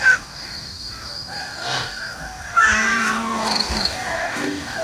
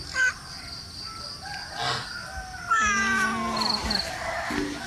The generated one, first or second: first